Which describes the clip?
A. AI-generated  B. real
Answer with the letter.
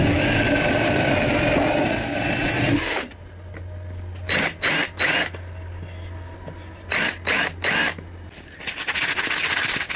B